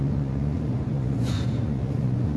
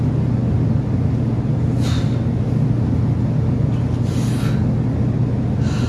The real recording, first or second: second